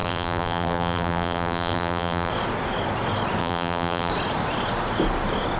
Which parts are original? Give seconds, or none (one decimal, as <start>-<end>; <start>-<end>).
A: 2.3-3.4; 4.1-5.6